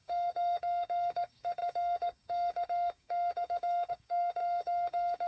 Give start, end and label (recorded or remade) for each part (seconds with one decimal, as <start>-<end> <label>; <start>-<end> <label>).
0.0-5.3 remade